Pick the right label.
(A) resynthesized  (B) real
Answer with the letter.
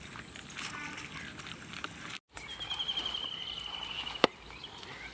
B